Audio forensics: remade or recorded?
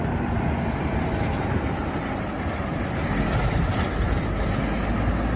recorded